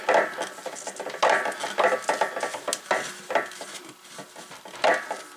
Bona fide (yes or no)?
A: yes